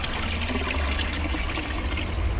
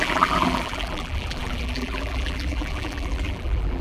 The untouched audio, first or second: first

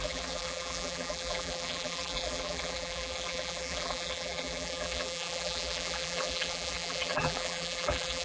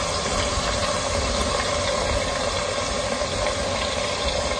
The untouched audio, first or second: second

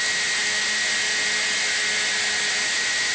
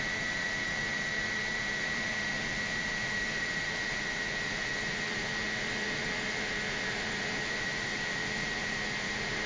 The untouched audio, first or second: first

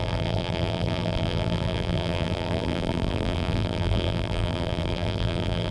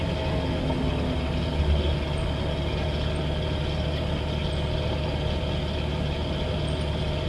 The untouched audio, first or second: second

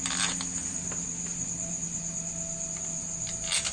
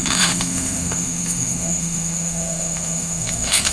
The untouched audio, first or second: first